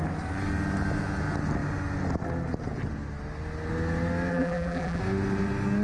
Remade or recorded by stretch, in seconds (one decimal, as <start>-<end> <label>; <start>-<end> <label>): 0.0-4.3 recorded; 4.3-5.0 remade; 5.0-5.8 recorded